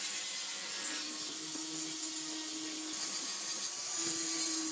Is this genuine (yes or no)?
yes